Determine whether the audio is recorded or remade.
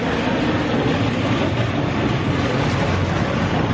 recorded